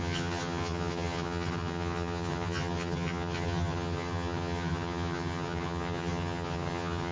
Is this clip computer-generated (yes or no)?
yes